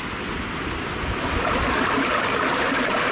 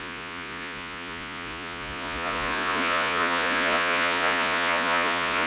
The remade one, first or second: second